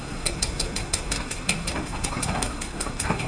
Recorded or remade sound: remade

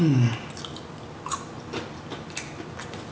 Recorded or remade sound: recorded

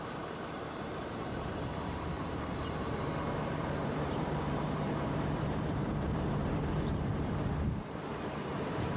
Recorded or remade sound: remade